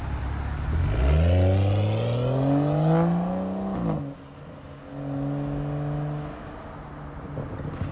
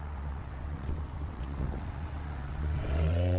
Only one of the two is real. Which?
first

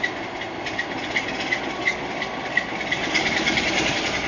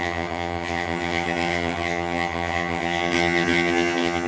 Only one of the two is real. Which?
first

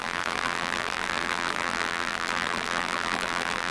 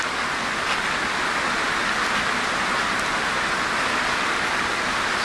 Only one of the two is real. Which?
second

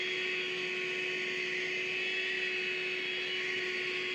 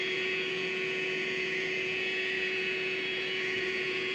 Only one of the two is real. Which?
first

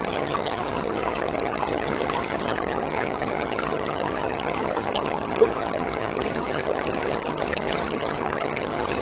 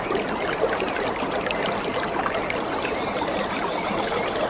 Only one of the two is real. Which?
second